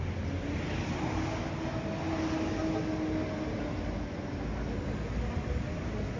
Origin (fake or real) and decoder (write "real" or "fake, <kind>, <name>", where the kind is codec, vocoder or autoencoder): real